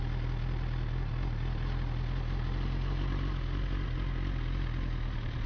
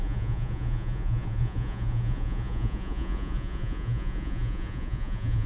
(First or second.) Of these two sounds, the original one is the first